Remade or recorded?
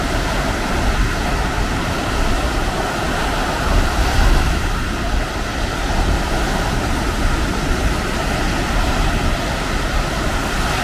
recorded